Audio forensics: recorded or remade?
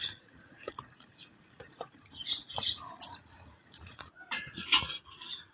remade